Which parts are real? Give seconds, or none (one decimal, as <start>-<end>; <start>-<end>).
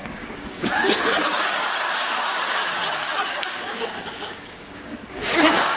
none